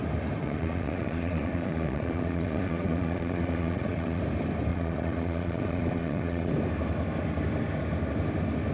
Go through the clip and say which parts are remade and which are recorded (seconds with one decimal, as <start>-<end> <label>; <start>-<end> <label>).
0.0-0.4 recorded; 0.4-4.2 remade; 4.2-4.7 recorded; 4.7-6.5 remade; 6.5-8.7 recorded

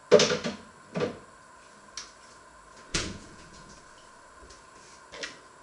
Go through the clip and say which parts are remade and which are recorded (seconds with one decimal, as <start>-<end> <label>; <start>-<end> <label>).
0.0-2.9 recorded; 2.9-3.7 remade; 3.7-5.6 recorded